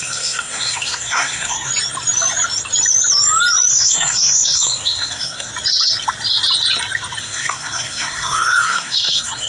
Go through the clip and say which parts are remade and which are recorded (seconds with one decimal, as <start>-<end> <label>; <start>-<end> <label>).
0.0-1.7 remade; 1.7-3.7 recorded; 3.7-5.5 remade; 5.5-7.2 recorded; 7.2-9.5 remade

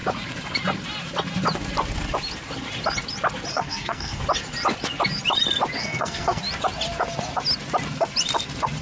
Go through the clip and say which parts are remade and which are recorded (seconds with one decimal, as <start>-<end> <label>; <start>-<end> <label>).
0.0-3.5 recorded; 3.5-4.2 remade; 4.2-5.8 recorded; 5.8-6.4 remade; 6.4-8.8 recorded

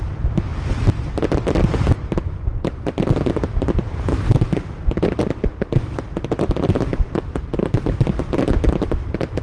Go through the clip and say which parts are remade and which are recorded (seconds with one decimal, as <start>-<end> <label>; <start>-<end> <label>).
0.0-9.4 recorded

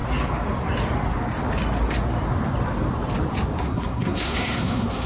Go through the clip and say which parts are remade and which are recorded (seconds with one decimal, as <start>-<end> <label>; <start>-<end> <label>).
0.0-3.6 recorded; 3.6-5.1 remade

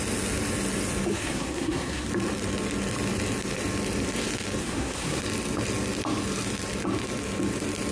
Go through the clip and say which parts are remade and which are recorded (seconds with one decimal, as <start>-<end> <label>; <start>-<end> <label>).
0.0-1.1 recorded; 1.1-2.1 remade; 2.1-4.6 recorded; 4.6-5.2 remade; 5.2-7.9 recorded